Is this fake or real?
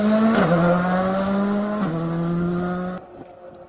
real